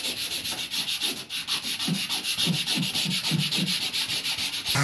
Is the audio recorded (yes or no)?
no